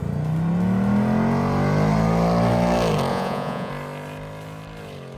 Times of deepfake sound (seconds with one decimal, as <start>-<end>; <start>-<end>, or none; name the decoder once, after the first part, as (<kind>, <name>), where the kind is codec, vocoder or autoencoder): 3.1-3.7 (vocoder, Vocos)